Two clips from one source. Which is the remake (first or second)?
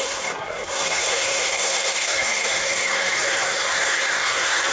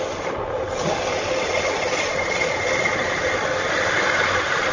first